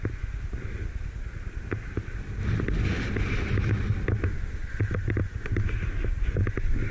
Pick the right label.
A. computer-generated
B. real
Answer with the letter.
B